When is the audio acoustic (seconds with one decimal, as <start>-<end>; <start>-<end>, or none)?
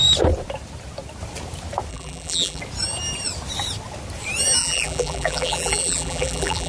0.0-1.9; 2.6-4.6